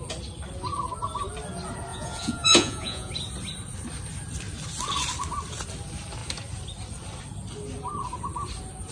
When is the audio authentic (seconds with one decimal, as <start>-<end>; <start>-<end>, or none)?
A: 0.0-1.9; 3.1-8.9